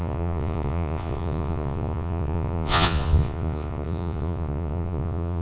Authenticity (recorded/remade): remade